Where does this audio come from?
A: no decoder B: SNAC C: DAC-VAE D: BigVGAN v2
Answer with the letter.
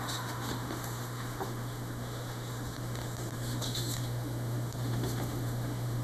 C